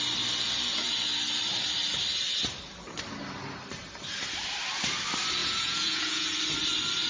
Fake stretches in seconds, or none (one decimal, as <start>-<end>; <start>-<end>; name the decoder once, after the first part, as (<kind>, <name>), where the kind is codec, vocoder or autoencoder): 5.4-6.3 (vocoder, Vocos)